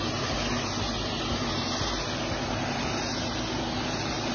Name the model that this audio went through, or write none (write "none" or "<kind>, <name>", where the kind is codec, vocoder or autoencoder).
none